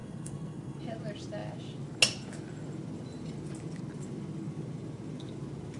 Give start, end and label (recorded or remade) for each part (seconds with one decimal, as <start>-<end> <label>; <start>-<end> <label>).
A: 0.0-0.8 remade; 0.8-5.8 recorded